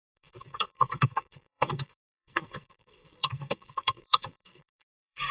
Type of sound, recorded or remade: remade